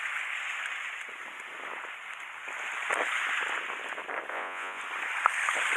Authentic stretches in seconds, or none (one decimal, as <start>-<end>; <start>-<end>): 0.0-4.3; 4.8-5.8